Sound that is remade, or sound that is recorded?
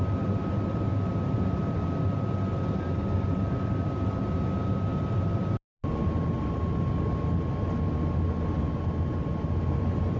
recorded